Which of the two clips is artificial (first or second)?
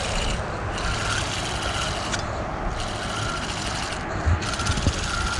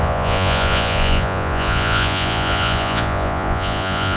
second